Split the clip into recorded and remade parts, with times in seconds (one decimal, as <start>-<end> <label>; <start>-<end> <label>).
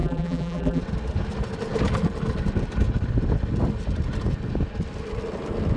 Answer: 0.0-0.8 remade; 0.8-5.8 recorded